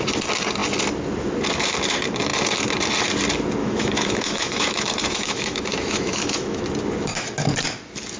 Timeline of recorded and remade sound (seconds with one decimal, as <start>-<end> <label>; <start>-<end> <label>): 0.0-3.6 recorded; 3.6-6.6 remade; 6.6-8.2 recorded

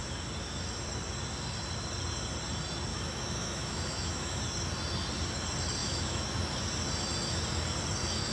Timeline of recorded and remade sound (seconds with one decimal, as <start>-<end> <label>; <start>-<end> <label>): 0.0-2.9 recorded; 2.9-4.4 remade; 4.4-5.8 recorded; 5.8-6.4 remade; 6.4-8.3 recorded

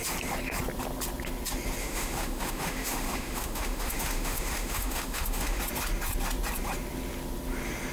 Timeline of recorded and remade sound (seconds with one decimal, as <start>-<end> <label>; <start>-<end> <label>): 0.0-1.8 recorded; 1.8-5.6 remade; 5.6-7.9 recorded

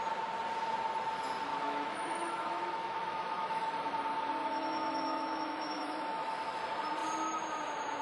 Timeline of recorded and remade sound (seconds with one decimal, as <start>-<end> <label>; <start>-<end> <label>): 0.0-1.5 recorded; 1.5-3.9 remade; 3.9-4.4 recorded; 4.4-6.6 remade; 6.6-8.0 recorded

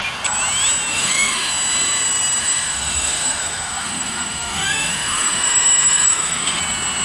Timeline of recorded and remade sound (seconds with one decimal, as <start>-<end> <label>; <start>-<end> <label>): 0.0-0.9 recorded; 0.9-1.5 remade; 1.5-2.4 recorded; 2.4-6.6 remade; 6.6-7.0 recorded

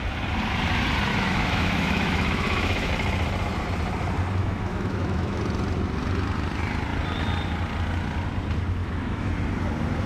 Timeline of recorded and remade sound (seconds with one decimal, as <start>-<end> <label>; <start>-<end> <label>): 0.0-1.1 recorded; 1.1-2.9 remade; 2.9-4.4 recorded; 4.4-5.4 remade; 5.4-8.8 recorded; 8.8-9.3 remade; 9.3-10.1 recorded

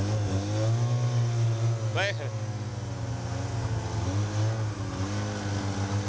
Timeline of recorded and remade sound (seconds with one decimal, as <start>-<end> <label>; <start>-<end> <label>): 0.0-6.1 recorded

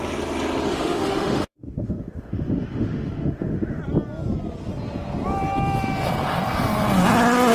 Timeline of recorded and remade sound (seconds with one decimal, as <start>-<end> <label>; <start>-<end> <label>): 0.0-0.7 recorded; 0.7-3.8 remade; 3.8-7.5 recorded